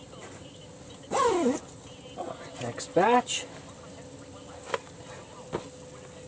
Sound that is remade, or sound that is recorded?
recorded